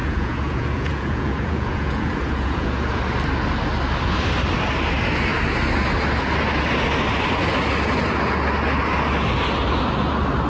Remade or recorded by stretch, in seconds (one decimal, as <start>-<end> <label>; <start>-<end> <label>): 0.0-3.0 remade; 3.0-10.5 recorded